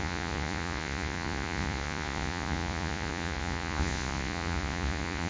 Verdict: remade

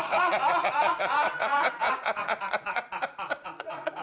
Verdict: remade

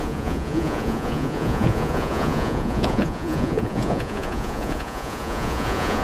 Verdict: remade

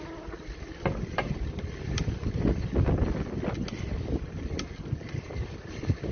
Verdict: recorded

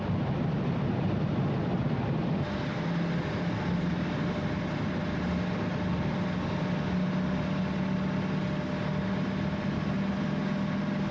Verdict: recorded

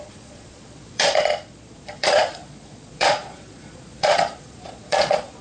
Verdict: remade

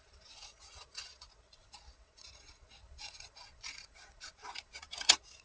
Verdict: remade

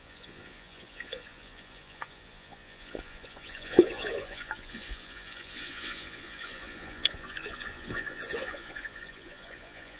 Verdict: remade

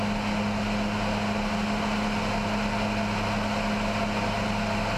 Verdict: recorded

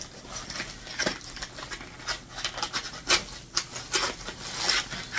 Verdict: recorded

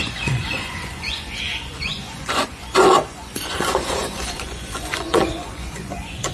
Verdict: remade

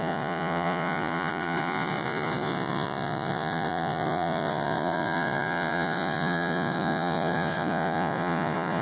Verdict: remade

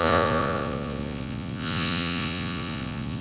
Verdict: remade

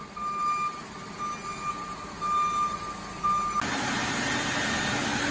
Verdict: recorded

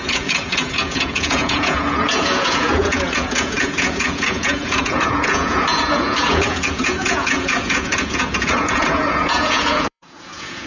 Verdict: remade